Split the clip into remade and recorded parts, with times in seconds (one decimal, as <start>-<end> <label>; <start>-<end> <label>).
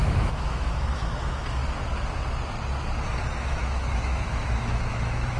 0.0-1.6 remade; 1.6-3.4 recorded; 3.4-5.4 remade